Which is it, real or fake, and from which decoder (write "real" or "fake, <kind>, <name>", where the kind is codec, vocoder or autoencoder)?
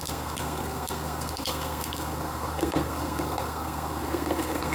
fake, codec, SNAC